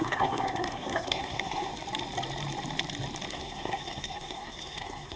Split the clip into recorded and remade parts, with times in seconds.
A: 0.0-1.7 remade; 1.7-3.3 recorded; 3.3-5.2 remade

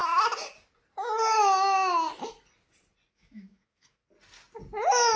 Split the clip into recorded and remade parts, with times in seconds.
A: 0.0-3.1 recorded; 3.1-4.0 remade; 4.0-5.2 recorded

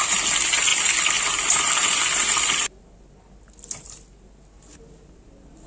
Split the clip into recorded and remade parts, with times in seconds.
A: 0.0-5.7 recorded

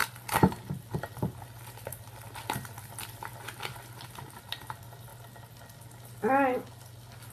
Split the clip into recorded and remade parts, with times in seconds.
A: 0.0-7.3 recorded

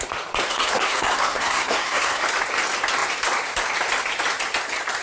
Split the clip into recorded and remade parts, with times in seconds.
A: 0.0-0.5 recorded; 0.5-2.2 remade; 2.2-5.0 recorded

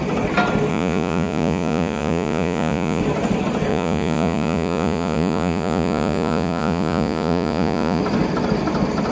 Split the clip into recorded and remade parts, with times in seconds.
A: 0.0-0.7 recorded; 0.7-3.0 remade; 3.0-3.7 recorded; 3.7-8.0 remade; 8.0-9.1 recorded